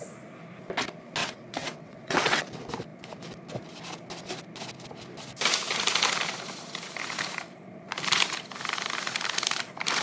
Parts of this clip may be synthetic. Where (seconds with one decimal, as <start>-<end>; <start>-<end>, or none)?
1.2-2.4